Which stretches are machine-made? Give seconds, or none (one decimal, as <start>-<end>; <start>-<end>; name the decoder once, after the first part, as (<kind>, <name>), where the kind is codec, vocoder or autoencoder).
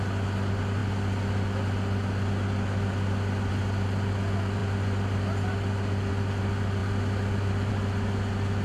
none